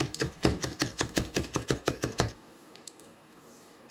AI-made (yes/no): yes